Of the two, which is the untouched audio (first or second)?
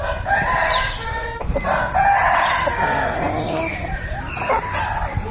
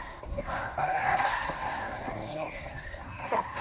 first